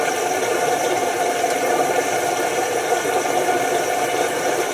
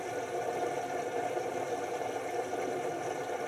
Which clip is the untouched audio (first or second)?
second